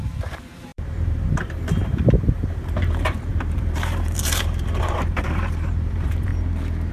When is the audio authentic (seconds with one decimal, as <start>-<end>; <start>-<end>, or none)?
6.3-6.9